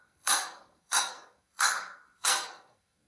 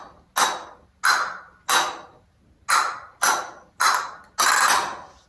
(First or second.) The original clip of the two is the second